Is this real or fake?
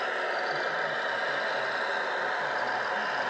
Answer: real